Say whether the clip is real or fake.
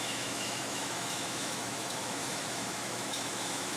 fake